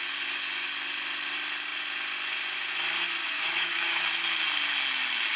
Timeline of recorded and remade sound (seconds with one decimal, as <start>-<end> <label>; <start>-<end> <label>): 0.0-3.2 recorded; 3.2-4.1 remade; 4.1-5.4 recorded